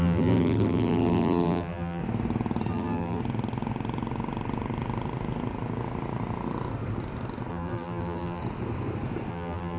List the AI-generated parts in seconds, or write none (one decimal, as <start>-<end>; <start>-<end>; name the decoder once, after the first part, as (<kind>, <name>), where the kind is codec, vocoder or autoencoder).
0.0-2.0 (vocoder, BigVGAN v2); 2.7-3.2; 7.5-8.4; 9.3-9.8